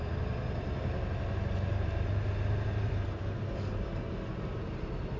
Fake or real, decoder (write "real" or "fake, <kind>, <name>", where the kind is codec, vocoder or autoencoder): real